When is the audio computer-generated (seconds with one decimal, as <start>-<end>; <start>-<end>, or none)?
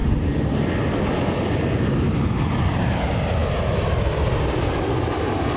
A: none